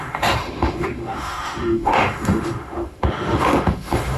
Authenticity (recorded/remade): remade